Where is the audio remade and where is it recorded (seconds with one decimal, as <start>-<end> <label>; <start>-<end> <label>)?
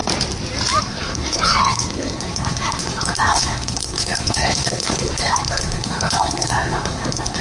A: 0.0-0.8 recorded; 0.8-7.4 remade